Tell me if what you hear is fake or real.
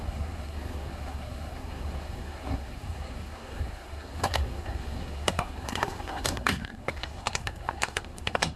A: fake